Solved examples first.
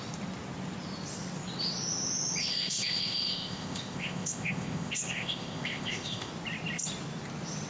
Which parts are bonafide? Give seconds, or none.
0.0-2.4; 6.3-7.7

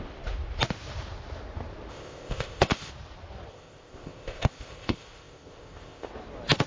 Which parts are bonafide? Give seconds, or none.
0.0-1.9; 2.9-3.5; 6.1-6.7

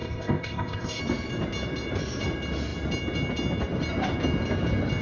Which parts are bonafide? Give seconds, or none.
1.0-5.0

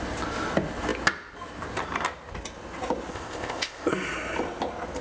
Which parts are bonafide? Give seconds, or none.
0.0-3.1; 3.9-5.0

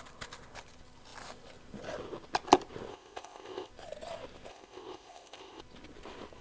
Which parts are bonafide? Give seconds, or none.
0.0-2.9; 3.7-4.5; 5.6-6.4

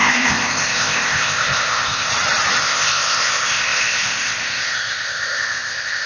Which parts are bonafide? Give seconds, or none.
2.1-2.6

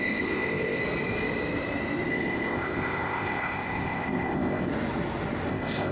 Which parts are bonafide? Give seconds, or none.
0.8-2.1; 4.7-5.5

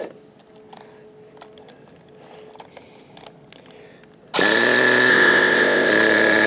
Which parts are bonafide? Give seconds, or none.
0.0-5.1; 5.9-6.5